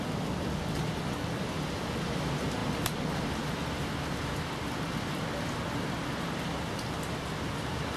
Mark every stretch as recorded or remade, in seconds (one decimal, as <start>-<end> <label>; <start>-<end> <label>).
0.0-8.0 recorded